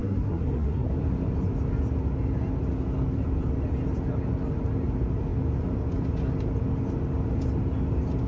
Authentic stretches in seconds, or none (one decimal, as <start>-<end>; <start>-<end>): 0.9-8.3